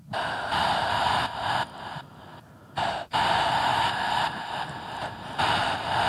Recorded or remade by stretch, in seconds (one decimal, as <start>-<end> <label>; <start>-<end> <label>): 0.0-0.5 recorded; 0.5-1.3 remade; 1.3-3.7 recorded; 3.7-4.6 remade; 4.6-6.1 recorded

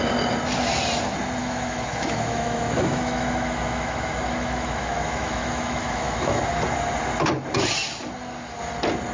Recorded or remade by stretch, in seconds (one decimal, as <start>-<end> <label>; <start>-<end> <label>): 0.0-1.4 recorded; 1.4-6.4 remade; 6.4-9.1 recorded

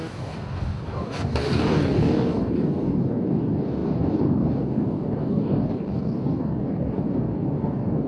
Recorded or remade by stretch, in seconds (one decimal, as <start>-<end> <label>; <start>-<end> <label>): 0.0-8.1 remade

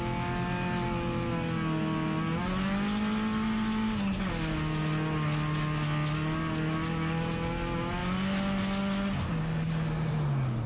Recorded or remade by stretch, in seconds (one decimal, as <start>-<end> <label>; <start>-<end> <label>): 0.0-10.7 recorded

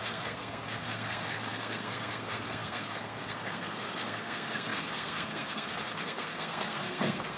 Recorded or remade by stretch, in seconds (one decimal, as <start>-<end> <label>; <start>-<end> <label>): 0.0-7.4 remade

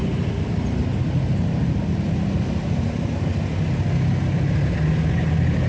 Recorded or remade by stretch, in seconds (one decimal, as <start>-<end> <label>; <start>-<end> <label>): 0.0-5.7 recorded